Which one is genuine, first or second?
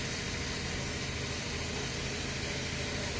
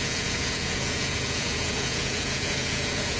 first